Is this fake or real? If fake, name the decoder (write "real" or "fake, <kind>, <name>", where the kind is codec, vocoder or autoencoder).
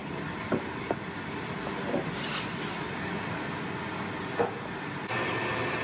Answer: real